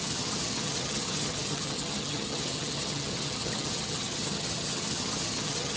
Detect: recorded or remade remade